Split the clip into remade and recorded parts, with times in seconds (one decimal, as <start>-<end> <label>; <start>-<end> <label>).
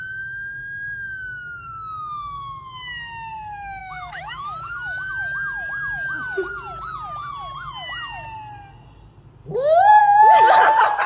0.0-3.8 recorded; 3.8-5.1 remade; 5.1-9.4 recorded; 9.4-10.0 remade; 10.0-11.1 recorded